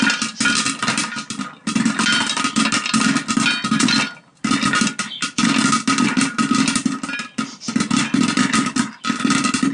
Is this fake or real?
real